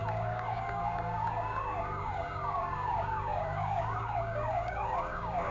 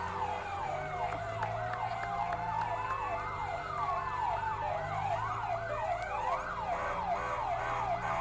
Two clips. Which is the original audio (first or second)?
second